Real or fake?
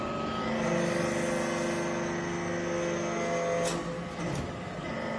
real